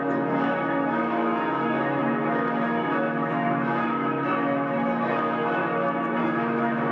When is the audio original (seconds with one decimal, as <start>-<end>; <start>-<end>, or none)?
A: 5.6-6.2